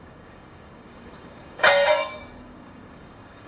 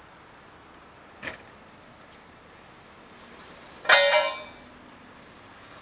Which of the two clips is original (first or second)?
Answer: second